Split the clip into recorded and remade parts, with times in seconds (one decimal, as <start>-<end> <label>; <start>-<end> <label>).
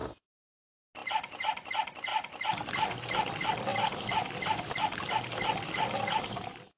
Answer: 0.0-0.6 remade; 0.6-1.0 recorded; 1.0-1.7 remade; 1.7-6.8 recorded